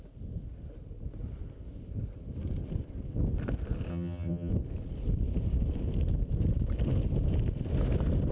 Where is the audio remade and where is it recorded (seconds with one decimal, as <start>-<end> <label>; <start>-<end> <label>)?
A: 0.0-3.9 recorded; 3.9-4.5 remade; 4.5-8.3 recorded